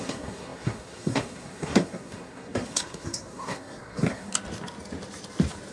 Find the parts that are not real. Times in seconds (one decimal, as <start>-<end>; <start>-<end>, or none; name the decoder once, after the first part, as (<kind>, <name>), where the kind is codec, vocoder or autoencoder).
0.0-4.3 (codec, SNAC)